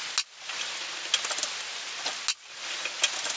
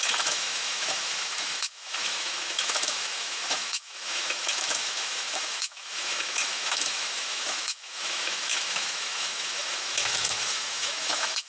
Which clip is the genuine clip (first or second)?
first